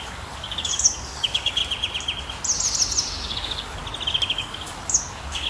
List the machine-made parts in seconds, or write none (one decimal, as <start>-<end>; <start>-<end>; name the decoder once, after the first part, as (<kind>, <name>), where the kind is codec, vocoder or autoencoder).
0.0-1.6 (codec, DAC); 3.1-3.8; 4.3-5.5